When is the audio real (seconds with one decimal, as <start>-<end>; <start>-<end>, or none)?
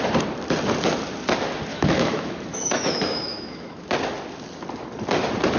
0.0-1.7; 3.9-5.6